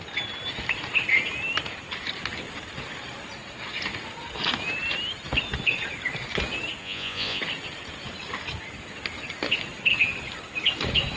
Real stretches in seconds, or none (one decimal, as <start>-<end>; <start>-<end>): 0.0-6.8; 7.4-11.2